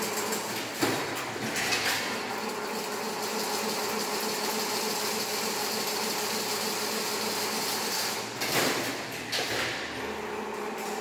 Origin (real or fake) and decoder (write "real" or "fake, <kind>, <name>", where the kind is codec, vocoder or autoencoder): real